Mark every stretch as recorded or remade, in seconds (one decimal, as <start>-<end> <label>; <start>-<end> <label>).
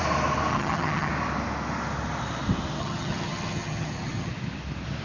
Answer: 0.0-0.5 recorded; 0.5-1.1 remade; 1.1-2.8 recorded; 2.8-4.3 remade; 4.3-5.0 recorded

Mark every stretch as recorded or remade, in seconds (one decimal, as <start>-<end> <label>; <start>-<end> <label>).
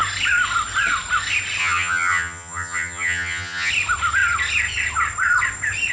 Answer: 0.0-1.6 recorded; 1.6-3.7 remade; 3.7-5.9 recorded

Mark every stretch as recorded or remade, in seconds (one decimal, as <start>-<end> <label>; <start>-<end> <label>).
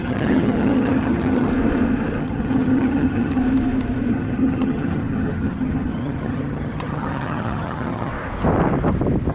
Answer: 0.0-1.5 remade; 1.5-2.2 recorded; 2.2-3.4 remade; 3.4-4.1 recorded; 4.1-8.1 remade; 8.1-9.3 recorded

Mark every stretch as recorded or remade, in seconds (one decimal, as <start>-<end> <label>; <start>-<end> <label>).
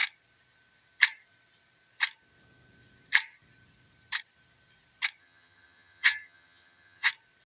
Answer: 0.0-5.2 recorded; 5.2-7.1 remade; 7.1-7.6 recorded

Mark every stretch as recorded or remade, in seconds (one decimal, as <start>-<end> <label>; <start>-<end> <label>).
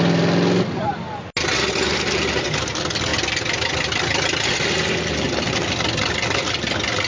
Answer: 0.0-7.1 recorded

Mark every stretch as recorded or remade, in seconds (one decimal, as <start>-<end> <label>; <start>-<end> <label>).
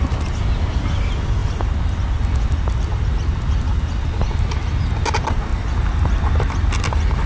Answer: 0.0-7.3 recorded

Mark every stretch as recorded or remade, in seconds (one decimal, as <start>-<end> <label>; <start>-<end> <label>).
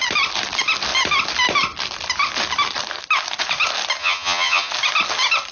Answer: 0.0-4.0 recorded; 4.0-4.7 remade; 4.7-5.5 recorded